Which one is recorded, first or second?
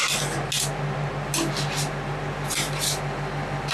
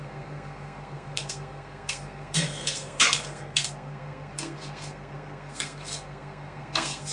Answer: first